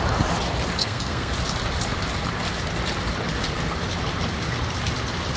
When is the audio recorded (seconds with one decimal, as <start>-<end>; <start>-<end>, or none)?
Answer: 0.0-0.8; 1.3-5.4